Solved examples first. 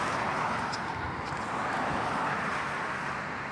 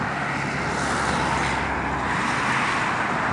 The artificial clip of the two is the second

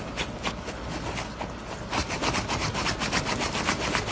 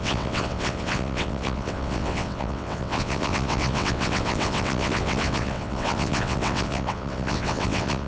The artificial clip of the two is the second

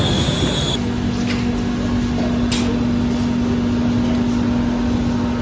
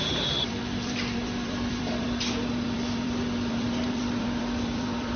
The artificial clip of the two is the second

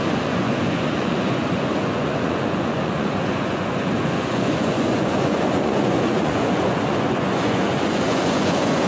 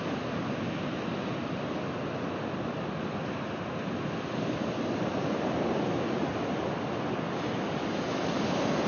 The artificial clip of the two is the first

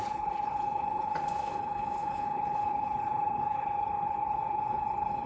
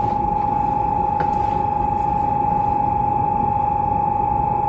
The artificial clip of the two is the first